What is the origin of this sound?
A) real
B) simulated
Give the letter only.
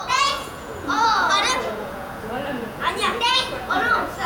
B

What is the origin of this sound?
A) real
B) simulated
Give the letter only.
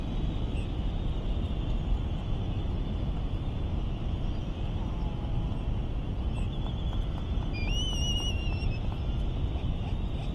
A